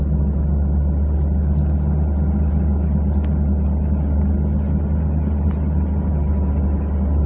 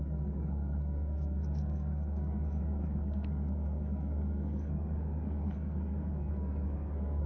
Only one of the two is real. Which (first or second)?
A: first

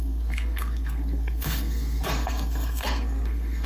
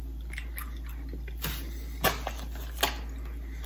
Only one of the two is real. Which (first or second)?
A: second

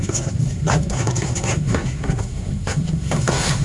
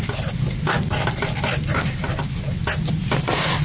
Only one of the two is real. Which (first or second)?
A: second